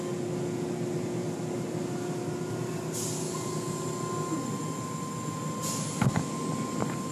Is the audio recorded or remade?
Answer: recorded